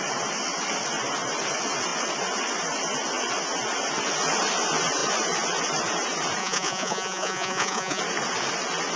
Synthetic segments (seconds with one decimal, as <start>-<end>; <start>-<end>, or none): 6.4-8.0